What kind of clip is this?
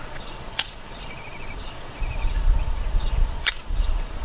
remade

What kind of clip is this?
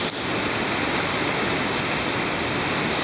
recorded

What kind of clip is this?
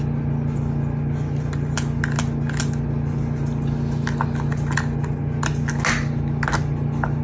recorded